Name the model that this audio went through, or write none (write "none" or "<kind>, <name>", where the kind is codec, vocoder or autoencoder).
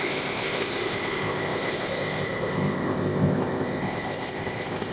codec, ZipCodec